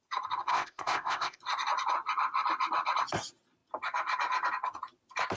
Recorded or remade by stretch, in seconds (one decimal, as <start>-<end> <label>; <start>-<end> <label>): 0.0-0.5 recorded; 0.5-1.4 remade; 1.4-5.4 recorded